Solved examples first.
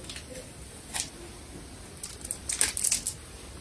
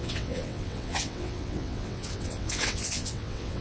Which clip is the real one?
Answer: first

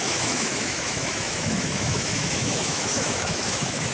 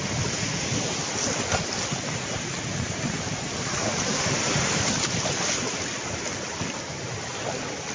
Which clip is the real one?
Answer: second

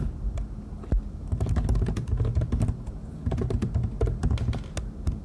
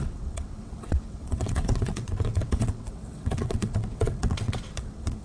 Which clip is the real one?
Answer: first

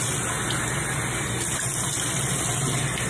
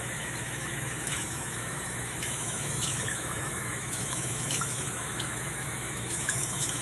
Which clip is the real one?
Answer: first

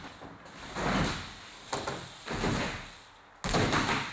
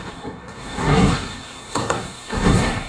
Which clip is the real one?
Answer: first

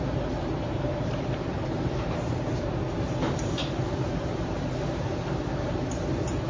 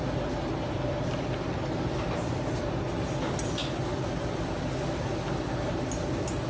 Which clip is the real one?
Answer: second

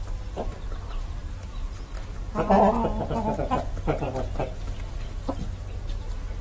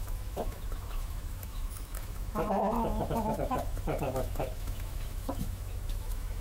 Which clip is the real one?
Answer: first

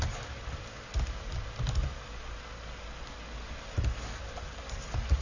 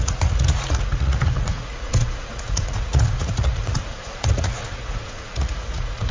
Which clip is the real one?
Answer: first